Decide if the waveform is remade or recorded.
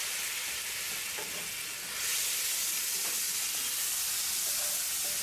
recorded